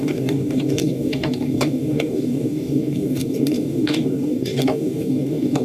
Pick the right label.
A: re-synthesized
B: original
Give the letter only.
A